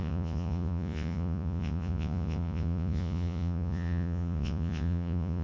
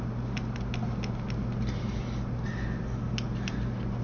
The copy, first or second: first